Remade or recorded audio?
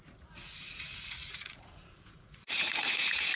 remade